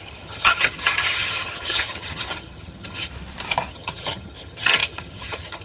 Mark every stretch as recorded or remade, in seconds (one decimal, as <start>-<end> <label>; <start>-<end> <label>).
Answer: 0.0-3.1 remade; 3.1-3.7 recorded; 3.7-5.6 remade